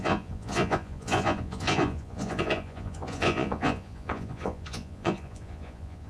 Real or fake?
fake